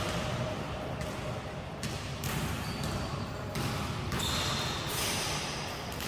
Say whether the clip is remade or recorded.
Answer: recorded